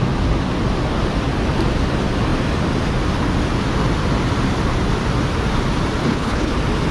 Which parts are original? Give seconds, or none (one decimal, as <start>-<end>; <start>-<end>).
0.0-6.0; 6.5-6.9